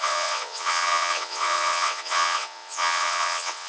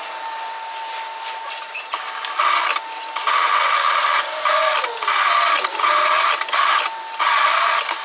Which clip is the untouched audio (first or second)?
second